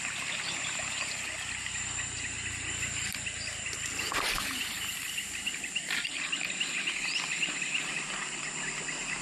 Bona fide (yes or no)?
yes